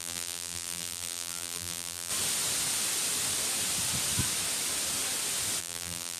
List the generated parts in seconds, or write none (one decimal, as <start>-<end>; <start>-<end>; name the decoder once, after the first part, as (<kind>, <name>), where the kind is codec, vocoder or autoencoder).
0.0-2.1 (vocoder, BigVGAN v2); 5.6-6.2